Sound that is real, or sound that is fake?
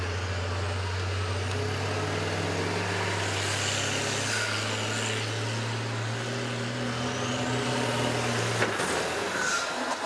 real